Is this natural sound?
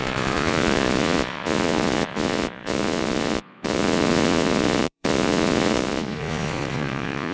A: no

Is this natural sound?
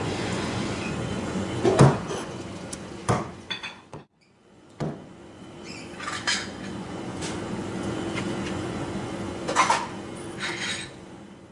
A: no